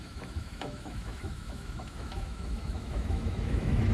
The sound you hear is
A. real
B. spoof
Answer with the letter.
B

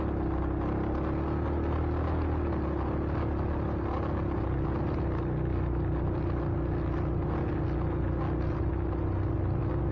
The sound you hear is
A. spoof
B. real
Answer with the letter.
B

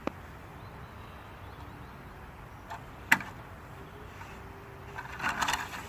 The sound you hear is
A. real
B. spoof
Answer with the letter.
A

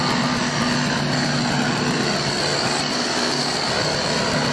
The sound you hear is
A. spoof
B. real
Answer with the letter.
B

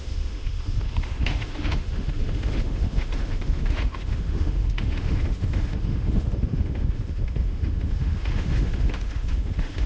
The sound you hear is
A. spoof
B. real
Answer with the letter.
A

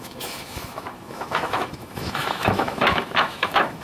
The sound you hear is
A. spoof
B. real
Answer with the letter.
A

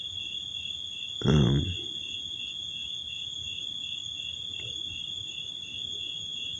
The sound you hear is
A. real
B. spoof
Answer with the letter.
A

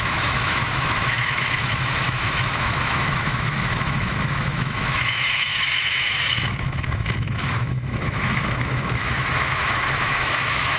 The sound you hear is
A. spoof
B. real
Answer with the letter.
A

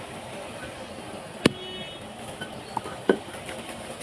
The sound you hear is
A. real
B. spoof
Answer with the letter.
A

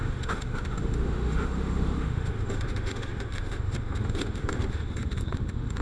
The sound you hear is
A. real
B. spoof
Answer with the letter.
B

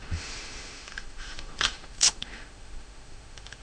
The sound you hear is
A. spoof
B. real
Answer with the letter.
A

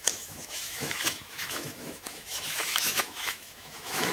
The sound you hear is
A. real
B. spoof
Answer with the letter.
B